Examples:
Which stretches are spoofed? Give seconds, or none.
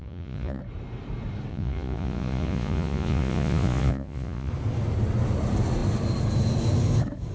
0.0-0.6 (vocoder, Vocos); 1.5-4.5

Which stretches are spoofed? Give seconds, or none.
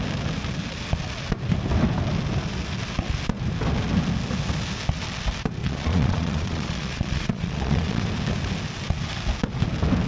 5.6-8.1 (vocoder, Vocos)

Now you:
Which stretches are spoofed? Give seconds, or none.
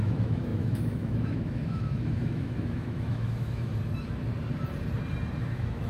0.0-3.7 (autoencoder, DAC-VAE); 5.4-5.9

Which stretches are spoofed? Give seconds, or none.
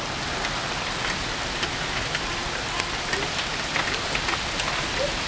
none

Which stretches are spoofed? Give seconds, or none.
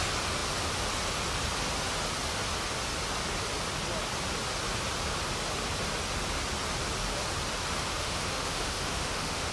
7.9-9.5 (autoencoder, DAC-VAE)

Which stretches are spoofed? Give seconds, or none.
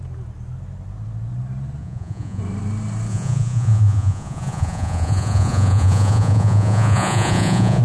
1.8-2.4 (vocoder, Vocos); 3.1-7.8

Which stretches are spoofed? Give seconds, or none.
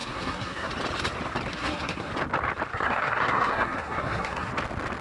0.0-0.7 (codec, SNAC); 1.5-2.1; 2.7-4.5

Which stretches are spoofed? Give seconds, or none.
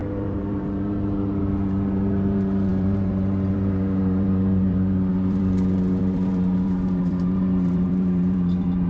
0.0-8.9 (vocoder, BigVGAN v2)